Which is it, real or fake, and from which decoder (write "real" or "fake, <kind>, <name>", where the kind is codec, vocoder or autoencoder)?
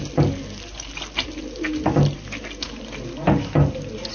real